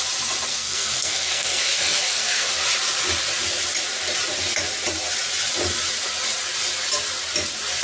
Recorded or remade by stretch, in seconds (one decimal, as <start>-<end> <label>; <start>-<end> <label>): 0.0-0.5 recorded; 0.5-2.5 remade; 2.5-7.8 recorded

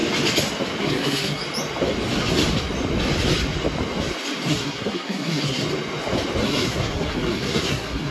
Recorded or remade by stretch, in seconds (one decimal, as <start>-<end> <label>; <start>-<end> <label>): 0.0-0.8 recorded; 0.8-1.4 remade; 1.4-4.5 recorded; 4.5-5.6 remade; 5.6-6.4 recorded; 6.4-8.1 remade

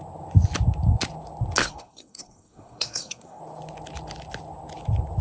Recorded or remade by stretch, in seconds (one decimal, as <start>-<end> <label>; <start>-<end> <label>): 0.0-1.6 recorded; 1.6-3.4 remade; 3.4-5.2 recorded

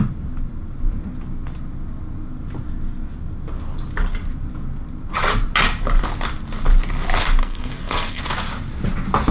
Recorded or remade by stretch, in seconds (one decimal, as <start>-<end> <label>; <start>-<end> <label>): 0.0-7.4 recorded; 7.4-8.2 remade; 8.2-9.3 recorded